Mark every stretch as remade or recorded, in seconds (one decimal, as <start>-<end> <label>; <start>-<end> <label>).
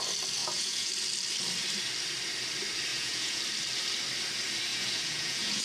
0.0-0.4 recorded; 0.4-0.9 remade; 0.9-2.9 recorded; 2.9-3.4 remade; 3.4-4.7 recorded; 4.7-5.6 remade